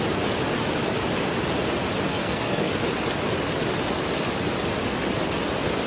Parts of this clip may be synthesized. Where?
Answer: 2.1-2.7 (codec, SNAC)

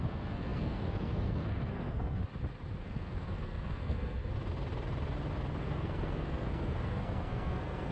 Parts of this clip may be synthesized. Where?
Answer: 0.0-2.2 (codec, SNAC); 2.8-4.2; 5.6-7.9

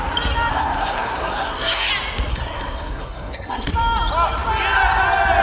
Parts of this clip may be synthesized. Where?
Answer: 0.5-1.9 (codec, SNAC); 2.3-3.7

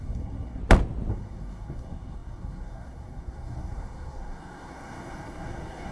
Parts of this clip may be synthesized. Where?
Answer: 0.0-0.6 (codec, SNAC); 1.1-5.9

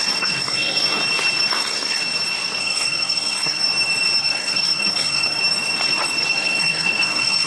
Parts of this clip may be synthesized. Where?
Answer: 0.0-1.0 (codec, SNAC); 1.5-2.0; 2.6-3.6; 4.2-5.4; 6.3-7.5

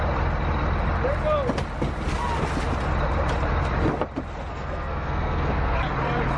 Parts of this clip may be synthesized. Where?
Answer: 4.5-5.8 (codec, SNAC)

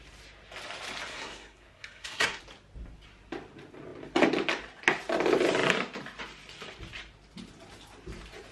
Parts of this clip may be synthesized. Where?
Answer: 1.1-2.4 (codec, SNAC)

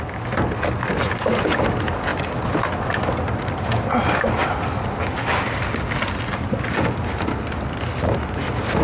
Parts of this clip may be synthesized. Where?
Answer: none